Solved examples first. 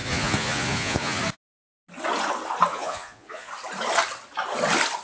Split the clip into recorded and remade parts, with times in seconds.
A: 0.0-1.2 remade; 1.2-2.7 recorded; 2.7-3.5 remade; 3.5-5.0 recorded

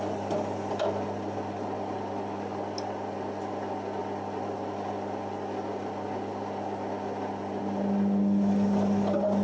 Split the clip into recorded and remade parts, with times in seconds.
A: 0.0-9.4 recorded

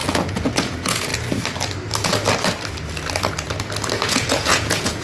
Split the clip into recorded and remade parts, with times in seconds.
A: 0.0-1.1 remade; 1.1-4.1 recorded; 4.1-5.0 remade

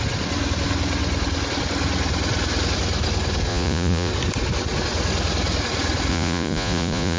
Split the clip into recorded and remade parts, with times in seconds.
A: 0.0-3.5 recorded; 3.5-4.1 remade; 4.1-6.1 recorded; 6.1-7.2 remade

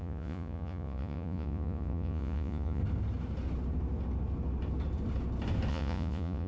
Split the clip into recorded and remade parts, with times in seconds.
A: 0.0-2.8 remade; 2.8-5.7 recorded; 5.7-6.5 remade

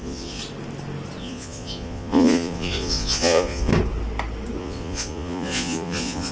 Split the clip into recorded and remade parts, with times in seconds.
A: 0.0-0.4 remade; 0.4-1.2 recorded; 1.2-3.7 remade; 3.7-4.6 recorded; 4.6-6.3 remade

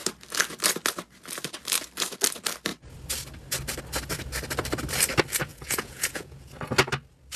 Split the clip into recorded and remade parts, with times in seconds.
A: 0.0-5.5 recorded; 5.5-6.5 remade; 6.5-7.4 recorded